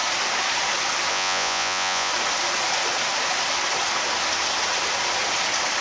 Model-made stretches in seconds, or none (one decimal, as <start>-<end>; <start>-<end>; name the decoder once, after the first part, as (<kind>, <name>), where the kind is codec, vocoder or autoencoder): 1.1-2.1 (vocoder, Vocos)